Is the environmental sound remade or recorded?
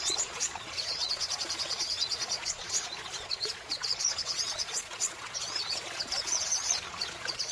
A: remade